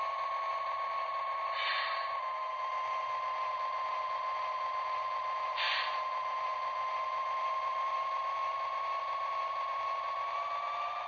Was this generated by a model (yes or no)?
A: yes